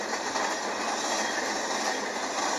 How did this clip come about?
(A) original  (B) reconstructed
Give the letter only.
A